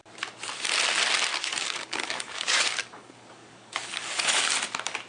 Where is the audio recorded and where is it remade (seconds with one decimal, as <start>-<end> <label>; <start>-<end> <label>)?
0.0-1.3 recorded; 1.3-4.4 remade; 4.4-5.1 recorded